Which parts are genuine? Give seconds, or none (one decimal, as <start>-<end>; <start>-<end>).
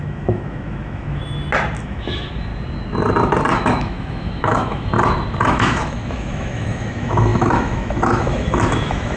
1.2-1.8; 2.5-3.5; 4.9-5.4